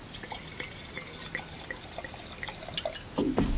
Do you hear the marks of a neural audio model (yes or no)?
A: no